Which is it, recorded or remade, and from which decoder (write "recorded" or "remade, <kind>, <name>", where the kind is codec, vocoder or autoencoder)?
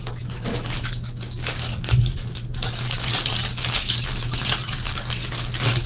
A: remade, codec, DAC